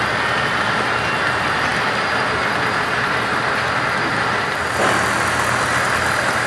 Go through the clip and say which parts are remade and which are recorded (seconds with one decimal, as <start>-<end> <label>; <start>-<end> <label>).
0.0-6.5 recorded